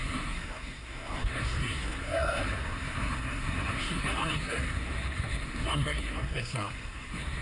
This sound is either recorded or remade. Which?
remade